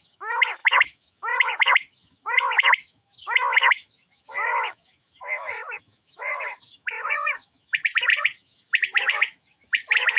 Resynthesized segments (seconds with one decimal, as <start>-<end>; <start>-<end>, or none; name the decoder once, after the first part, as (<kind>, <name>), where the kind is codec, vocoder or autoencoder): 0.0-10.2 (autoencoder, DAC-VAE)